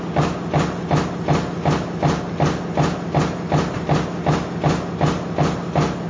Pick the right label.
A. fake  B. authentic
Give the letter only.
B